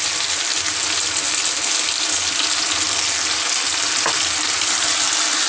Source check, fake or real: real